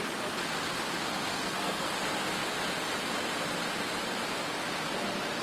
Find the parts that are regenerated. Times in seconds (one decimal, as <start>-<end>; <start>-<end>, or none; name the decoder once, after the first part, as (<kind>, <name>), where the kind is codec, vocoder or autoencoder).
1.3-1.9 (codec, SNAC)